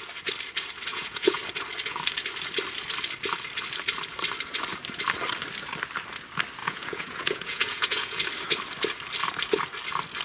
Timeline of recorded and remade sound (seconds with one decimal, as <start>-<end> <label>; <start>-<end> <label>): 0.0-0.9 recorded; 0.9-1.4 remade; 1.4-6.6 recorded; 6.6-8.2 remade; 8.2-10.2 recorded